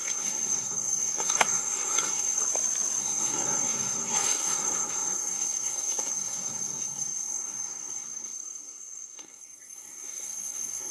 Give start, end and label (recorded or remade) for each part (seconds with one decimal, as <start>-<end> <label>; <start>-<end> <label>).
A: 0.0-2.4 remade; 2.4-3.0 recorded; 3.0-10.9 remade